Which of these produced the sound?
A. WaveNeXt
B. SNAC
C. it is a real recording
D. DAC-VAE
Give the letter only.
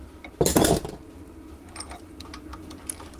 C